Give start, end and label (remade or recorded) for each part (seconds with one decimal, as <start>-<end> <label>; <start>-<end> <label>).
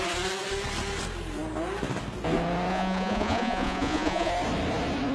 0.0-2.7 recorded; 2.7-4.3 remade; 4.3-5.1 recorded